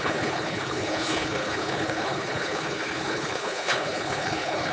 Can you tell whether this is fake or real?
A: fake